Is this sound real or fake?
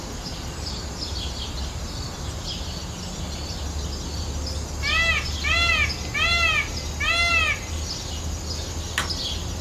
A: real